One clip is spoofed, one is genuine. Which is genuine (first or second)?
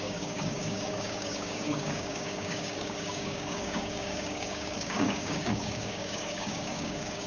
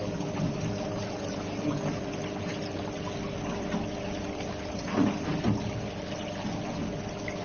second